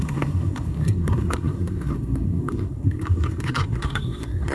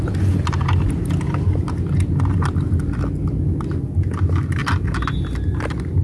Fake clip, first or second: first